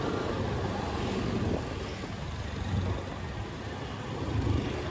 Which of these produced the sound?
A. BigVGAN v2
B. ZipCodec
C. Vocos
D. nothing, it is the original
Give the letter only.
D